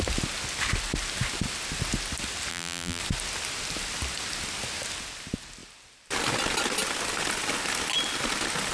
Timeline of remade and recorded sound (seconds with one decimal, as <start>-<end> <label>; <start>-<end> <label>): 0.0-2.5 recorded; 2.5-3.0 remade; 3.0-8.7 recorded